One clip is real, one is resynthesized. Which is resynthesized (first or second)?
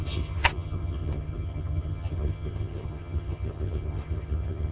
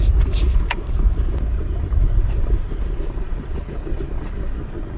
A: first